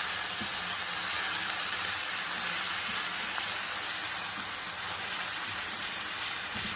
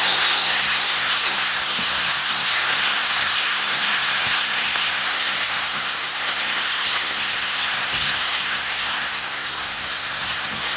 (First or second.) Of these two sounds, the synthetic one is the second